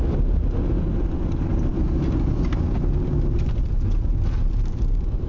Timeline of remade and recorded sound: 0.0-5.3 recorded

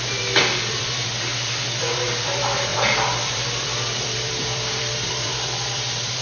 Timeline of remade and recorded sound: 0.0-6.2 remade

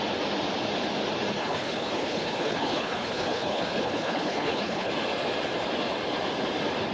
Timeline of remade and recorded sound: 0.0-1.4 recorded; 1.4-4.9 remade; 4.9-6.9 recorded

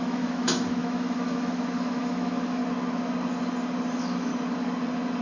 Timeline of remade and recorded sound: 0.0-2.6 remade; 2.6-3.9 recorded; 3.9-4.3 remade; 4.3-5.2 recorded

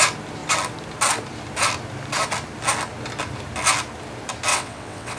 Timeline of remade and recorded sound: 0.0-4.5 recorded; 4.5-5.2 remade

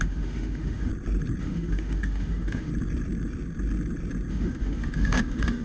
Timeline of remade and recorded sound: 0.0-0.9 remade; 0.9-1.4 recorded; 1.4-2.7 remade; 2.7-4.3 recorded; 4.3-5.6 remade

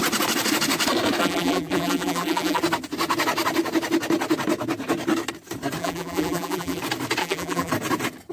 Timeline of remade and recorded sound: 0.0-1.2 recorded; 1.2-2.6 remade; 2.6-5.8 recorded; 5.8-6.8 remade; 6.8-7.2 recorded; 7.2-7.7 remade; 7.7-8.3 recorded